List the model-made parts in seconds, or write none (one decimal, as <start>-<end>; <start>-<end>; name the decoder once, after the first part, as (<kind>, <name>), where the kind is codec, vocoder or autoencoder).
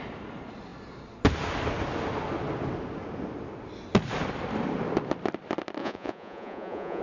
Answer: 5.8-7.0 (vocoder, Vocos)